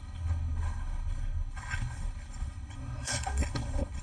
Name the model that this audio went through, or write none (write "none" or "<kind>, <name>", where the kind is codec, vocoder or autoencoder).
codec, HILCodec